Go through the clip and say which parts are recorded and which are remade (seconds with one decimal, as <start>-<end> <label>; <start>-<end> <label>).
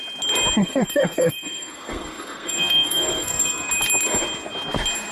0.0-0.6 recorded; 0.6-3.7 remade; 3.7-5.1 recorded